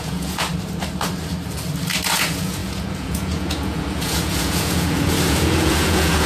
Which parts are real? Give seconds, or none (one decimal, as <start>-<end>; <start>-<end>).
0.5-2.1